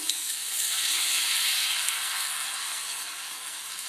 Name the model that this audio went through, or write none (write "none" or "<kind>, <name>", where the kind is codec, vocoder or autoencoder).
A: codec, SNAC